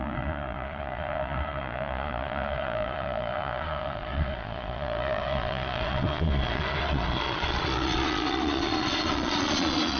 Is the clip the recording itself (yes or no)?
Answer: no